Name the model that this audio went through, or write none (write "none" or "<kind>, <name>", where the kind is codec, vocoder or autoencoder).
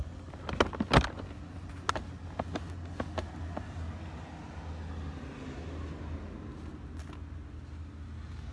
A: none